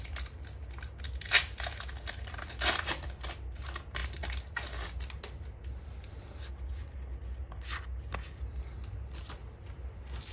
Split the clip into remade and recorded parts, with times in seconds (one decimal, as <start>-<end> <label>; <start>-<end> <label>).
0.0-10.3 recorded

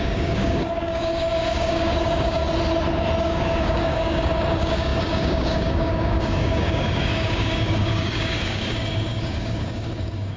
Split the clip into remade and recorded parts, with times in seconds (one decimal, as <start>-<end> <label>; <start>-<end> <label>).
0.0-2.4 remade; 2.4-3.2 recorded; 3.2-10.4 remade